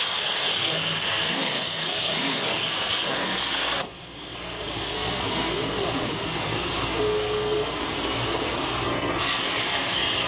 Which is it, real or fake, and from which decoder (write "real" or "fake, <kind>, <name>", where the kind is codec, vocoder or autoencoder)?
fake, codec, SNAC